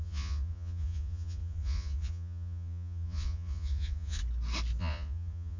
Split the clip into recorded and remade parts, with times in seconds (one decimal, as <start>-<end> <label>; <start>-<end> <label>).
0.0-4.2 remade; 4.2-4.8 recorded; 4.8-5.6 remade